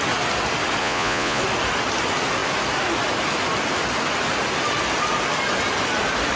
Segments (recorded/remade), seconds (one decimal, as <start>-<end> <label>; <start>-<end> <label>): 0.0-0.8 recorded; 0.8-1.4 remade; 1.4-6.4 recorded